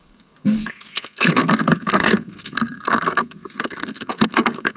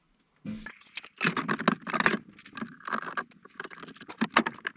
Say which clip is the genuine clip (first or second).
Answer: second